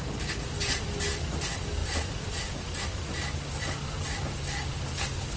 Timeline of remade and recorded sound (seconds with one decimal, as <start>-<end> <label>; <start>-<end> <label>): 0.0-5.4 recorded